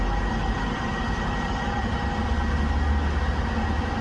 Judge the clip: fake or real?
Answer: real